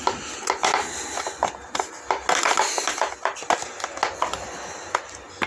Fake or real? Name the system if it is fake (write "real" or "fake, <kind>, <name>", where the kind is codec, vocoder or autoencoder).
real